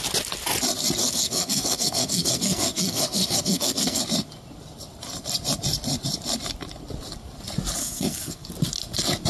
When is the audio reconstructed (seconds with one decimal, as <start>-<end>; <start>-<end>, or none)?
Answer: 1.0-4.0; 7.8-8.5